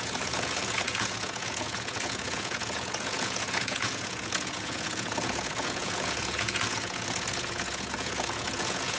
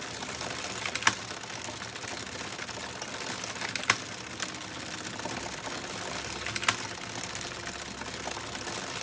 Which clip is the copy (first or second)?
first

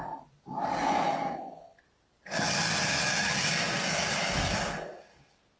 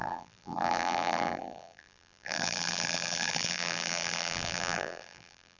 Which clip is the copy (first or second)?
second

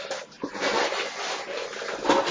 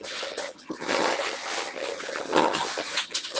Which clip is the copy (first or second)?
second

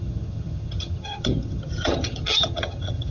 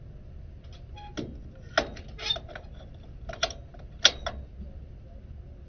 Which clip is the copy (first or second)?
first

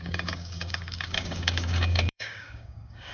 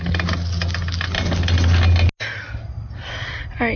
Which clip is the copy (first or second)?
first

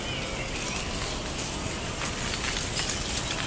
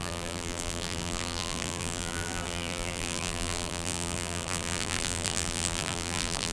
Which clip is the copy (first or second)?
second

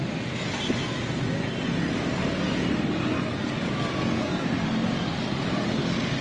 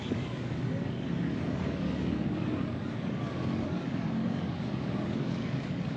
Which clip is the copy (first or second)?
second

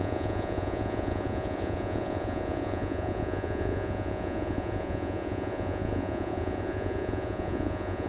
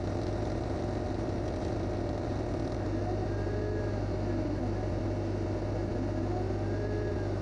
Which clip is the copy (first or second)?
first